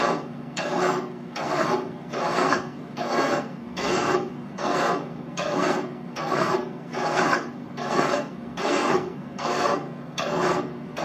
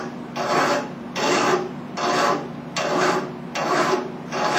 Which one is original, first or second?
second